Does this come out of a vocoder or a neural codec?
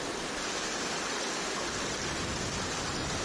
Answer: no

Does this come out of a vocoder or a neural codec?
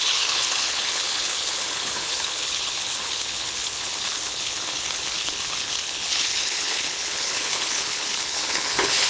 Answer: yes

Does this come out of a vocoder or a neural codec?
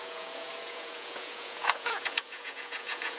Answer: yes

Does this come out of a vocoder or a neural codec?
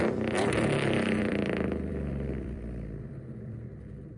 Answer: yes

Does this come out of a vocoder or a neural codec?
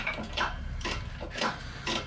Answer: no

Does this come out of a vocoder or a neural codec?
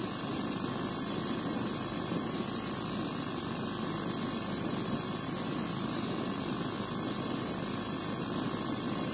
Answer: no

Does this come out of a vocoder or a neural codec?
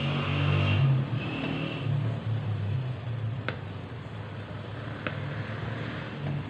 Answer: no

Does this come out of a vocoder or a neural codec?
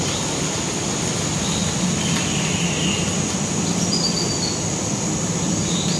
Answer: no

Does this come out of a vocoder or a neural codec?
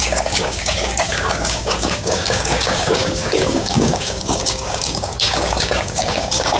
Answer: yes